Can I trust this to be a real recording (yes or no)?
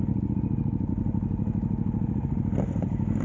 yes